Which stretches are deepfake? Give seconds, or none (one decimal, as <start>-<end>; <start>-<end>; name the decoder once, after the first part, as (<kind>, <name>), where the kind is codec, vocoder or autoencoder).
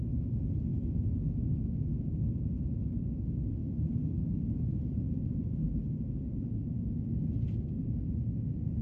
0.7-2.2 (autoencoder, DAC-VAE)